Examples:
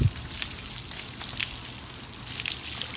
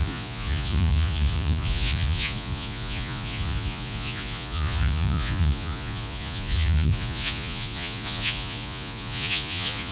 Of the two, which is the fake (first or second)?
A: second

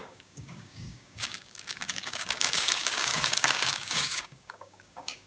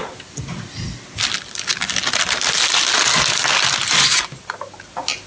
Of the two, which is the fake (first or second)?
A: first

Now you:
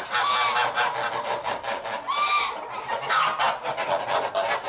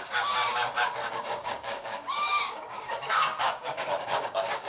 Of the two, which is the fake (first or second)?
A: second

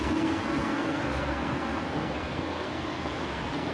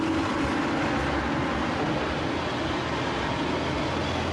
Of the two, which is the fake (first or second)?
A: first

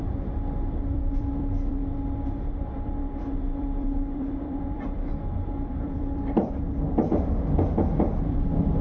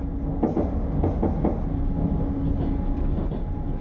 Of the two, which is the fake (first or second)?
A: first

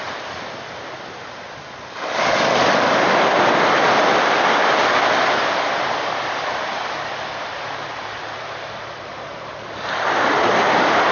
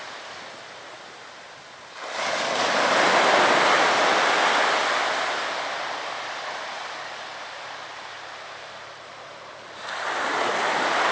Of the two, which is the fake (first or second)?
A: first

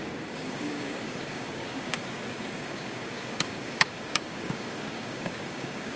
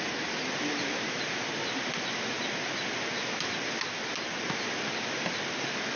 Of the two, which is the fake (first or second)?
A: first